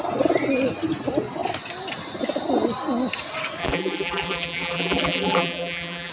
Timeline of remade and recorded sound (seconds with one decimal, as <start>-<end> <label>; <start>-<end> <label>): 0.0-3.6 recorded; 3.6-6.1 remade

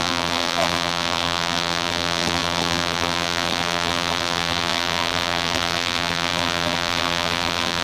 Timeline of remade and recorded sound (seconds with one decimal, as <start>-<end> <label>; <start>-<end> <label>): 0.0-7.8 remade

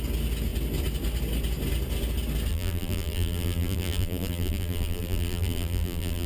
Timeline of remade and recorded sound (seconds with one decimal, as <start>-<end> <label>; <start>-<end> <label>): 0.0-2.5 recorded; 2.5-6.3 remade

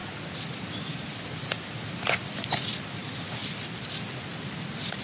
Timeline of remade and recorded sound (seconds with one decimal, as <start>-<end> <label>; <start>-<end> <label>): 0.0-3.4 recorded; 3.4-4.0 remade; 4.0-5.0 recorded

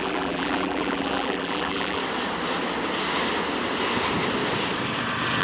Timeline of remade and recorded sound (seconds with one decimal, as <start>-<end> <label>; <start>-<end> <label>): 0.0-2.0 remade; 2.0-5.4 recorded